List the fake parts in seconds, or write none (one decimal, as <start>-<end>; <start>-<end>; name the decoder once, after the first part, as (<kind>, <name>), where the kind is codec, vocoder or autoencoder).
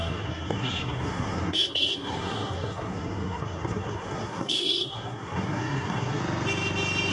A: 0.0-6.2 (codec, SNAC)